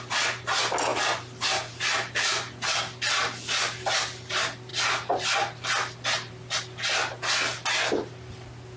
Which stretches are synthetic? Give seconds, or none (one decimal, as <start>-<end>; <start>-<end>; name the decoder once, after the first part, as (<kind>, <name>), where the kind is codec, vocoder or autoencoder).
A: none